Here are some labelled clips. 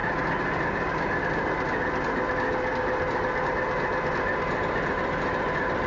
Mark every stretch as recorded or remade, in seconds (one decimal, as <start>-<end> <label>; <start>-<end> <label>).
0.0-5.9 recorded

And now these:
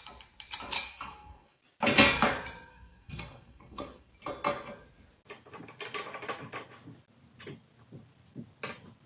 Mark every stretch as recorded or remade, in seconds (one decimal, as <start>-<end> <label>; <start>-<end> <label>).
0.0-0.9 recorded; 0.9-1.6 remade; 1.6-2.7 recorded; 2.7-4.1 remade; 4.1-9.1 recorded

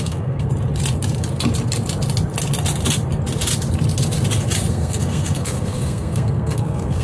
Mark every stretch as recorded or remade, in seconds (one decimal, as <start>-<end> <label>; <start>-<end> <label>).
0.0-0.5 remade; 0.5-4.7 recorded; 4.7-7.0 remade

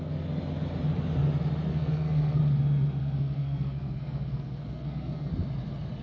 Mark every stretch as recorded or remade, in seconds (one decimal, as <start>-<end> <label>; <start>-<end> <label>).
0.0-1.7 recorded; 1.7-2.4 remade; 2.4-3.0 recorded; 3.0-5.3 remade; 5.3-6.0 recorded

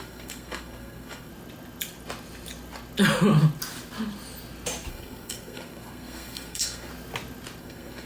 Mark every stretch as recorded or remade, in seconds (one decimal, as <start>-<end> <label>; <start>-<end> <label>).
0.0-1.3 remade; 1.3-4.9 recorded; 4.9-6.9 remade; 6.9-7.6 recorded; 7.6-8.1 remade